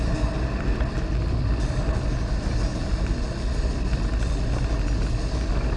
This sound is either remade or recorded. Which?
recorded